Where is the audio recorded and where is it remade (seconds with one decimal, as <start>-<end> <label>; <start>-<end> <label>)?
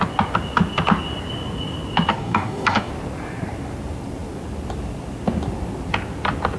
0.0-2.1 recorded; 2.1-2.9 remade; 2.9-6.6 recorded